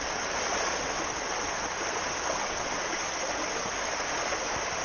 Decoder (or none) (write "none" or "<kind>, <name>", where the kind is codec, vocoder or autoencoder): none